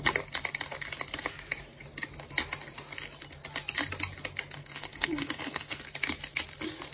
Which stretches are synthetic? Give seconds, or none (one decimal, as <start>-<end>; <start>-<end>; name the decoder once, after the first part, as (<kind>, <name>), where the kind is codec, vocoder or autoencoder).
4.6-5.8 (codec, SNAC)